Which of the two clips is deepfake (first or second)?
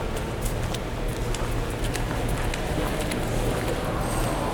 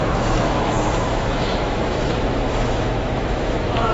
second